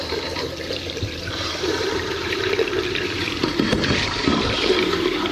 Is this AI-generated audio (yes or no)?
yes